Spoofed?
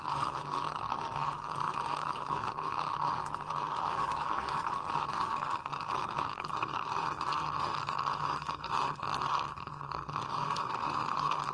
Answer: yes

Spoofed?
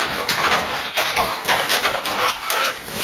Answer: yes